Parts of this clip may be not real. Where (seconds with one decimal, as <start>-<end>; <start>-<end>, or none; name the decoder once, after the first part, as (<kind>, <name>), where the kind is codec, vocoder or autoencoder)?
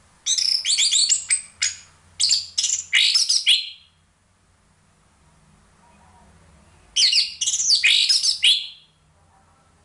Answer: none